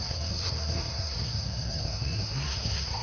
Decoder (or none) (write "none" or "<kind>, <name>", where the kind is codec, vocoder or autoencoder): codec, SNAC